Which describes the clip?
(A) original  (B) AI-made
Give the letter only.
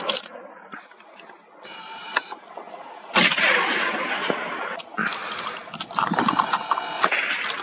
A